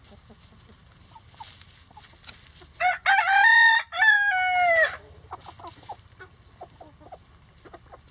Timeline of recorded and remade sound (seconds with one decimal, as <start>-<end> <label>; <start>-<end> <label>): 0.0-8.1 recorded